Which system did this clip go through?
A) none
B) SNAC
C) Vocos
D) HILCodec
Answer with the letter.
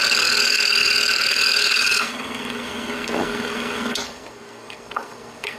B